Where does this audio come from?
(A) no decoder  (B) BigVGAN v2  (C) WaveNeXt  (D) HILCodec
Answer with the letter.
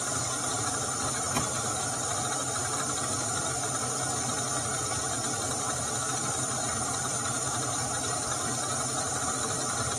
A